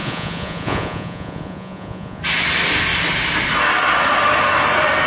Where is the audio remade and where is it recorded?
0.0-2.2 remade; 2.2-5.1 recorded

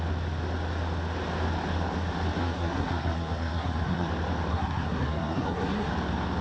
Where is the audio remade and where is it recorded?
0.0-2.4 recorded; 2.4-4.1 remade; 4.1-4.5 recorded; 4.5-5.9 remade; 5.9-6.4 recorded

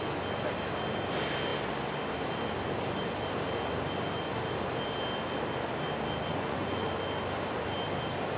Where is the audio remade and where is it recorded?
0.0-6.3 recorded; 6.3-6.9 remade; 6.9-8.4 recorded

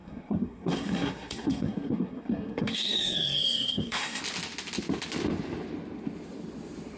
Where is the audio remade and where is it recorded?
0.0-4.2 remade; 4.2-7.0 recorded

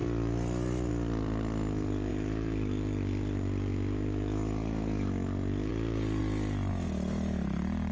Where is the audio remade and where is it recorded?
0.0-0.9 remade; 0.9-2.1 recorded; 2.1-5.7 remade; 5.7-6.2 recorded; 6.2-6.7 remade; 6.7-7.9 recorded

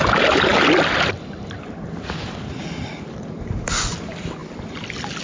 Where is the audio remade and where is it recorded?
0.0-5.2 recorded